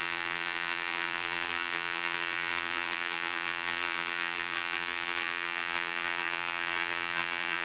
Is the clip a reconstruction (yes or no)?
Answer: yes